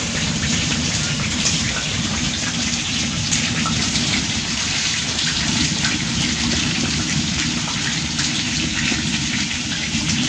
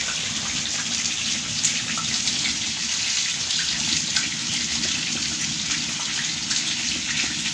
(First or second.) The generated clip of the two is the first